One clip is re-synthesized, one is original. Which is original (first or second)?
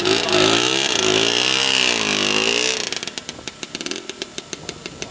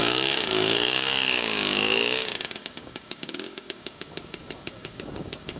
first